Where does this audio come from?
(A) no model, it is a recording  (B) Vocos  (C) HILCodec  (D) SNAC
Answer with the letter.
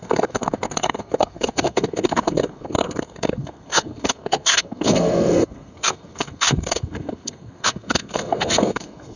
D